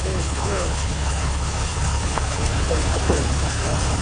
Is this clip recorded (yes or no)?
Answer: no